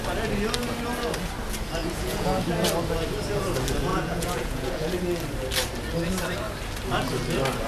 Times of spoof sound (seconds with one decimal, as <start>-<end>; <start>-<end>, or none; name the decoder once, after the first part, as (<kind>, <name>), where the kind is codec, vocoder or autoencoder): 1.8-2.4 (vocoder, Vocos); 3.9-5.0